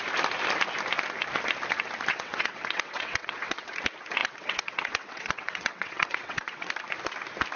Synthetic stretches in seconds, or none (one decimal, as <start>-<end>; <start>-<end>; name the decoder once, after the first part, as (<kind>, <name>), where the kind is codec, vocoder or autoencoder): 2.1-3.7 (vocoder, WaveNeXt); 4.2-6.7